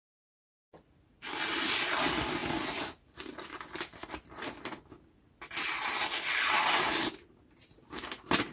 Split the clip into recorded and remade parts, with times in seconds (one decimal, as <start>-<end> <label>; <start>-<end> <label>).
0.0-8.5 recorded